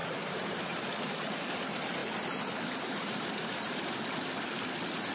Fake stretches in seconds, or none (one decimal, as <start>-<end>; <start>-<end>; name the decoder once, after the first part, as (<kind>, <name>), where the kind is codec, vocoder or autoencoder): 0.0-0.8 (vocoder, BigVGAN v2); 3.0-3.8